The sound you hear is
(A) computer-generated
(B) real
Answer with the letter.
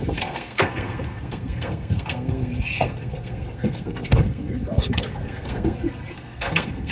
A